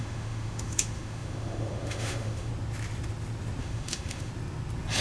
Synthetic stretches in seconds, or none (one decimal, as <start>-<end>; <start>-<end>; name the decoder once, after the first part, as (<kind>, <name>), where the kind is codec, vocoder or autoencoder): 0.0-2.5 (autoencoder, DAC-VAE); 3.6-4.3